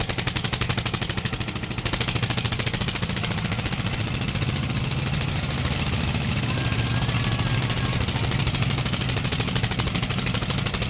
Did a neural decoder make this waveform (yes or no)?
no